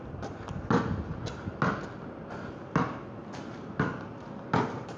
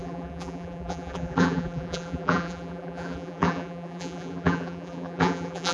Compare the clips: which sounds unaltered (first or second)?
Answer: first